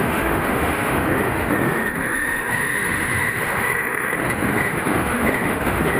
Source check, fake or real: fake